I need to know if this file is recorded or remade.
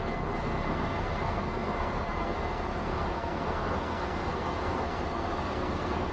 remade